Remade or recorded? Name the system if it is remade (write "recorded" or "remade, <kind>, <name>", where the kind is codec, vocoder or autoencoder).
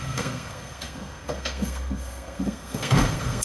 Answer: remade, codec, SNAC